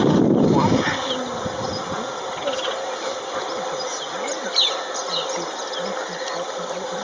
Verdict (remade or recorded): recorded